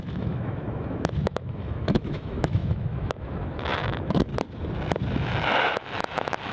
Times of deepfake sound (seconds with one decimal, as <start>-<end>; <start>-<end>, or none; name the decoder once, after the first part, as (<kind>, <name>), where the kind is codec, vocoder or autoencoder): 0.0-4.3 (autoencoder, DAC-VAE); 5.1-6.5